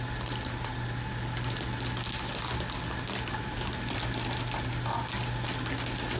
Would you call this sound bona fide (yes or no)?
yes